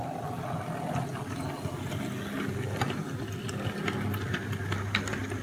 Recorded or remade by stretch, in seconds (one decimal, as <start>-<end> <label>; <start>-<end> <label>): 0.0-5.4 recorded